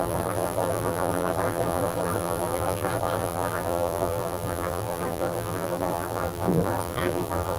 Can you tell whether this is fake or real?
fake